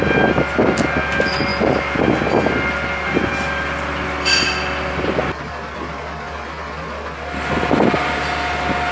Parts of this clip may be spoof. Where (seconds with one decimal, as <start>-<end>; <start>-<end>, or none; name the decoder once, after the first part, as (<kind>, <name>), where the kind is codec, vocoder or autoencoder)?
none